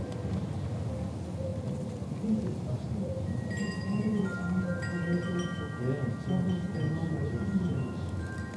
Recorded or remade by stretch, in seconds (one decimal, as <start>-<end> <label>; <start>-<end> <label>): 0.0-1.5 recorded; 1.5-4.2 remade; 4.2-7.0 recorded; 7.0-8.0 remade; 8.0-8.6 recorded